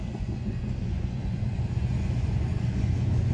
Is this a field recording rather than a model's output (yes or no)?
no